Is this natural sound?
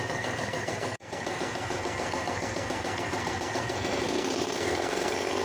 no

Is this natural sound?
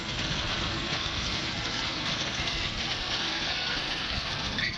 no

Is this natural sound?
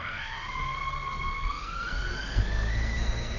no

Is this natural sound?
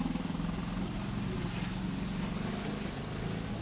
yes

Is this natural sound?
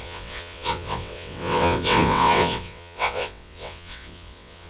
no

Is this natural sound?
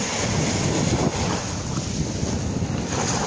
yes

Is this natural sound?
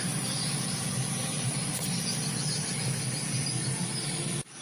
yes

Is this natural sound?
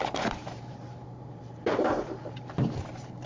no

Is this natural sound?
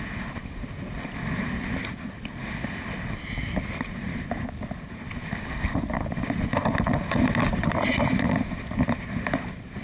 yes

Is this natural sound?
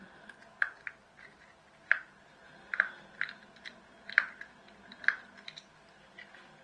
yes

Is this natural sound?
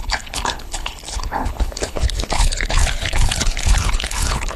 no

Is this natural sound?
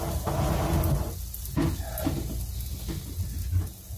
yes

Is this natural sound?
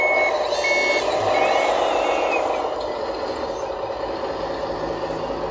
yes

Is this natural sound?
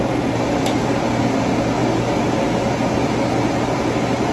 yes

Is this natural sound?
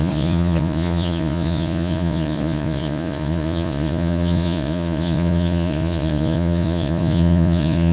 no